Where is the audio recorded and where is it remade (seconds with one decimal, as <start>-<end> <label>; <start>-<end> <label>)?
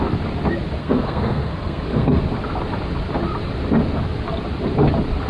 0.0-0.8 recorded; 0.8-2.2 remade; 2.2-5.3 recorded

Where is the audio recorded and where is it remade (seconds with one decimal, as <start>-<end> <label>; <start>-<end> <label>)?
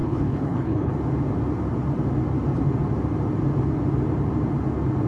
0.0-0.9 remade; 0.9-5.1 recorded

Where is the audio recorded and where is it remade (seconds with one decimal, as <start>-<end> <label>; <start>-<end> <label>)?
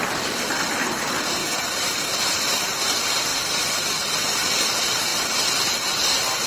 0.0-1.4 recorded; 1.4-2.6 remade; 2.6-6.5 recorded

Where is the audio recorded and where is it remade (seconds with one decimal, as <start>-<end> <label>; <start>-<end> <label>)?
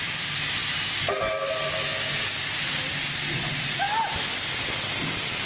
0.0-5.5 recorded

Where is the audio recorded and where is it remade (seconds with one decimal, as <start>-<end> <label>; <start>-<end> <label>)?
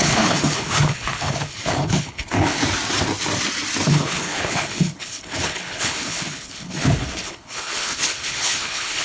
0.0-2.6 remade; 2.6-3.9 recorded; 3.9-9.0 remade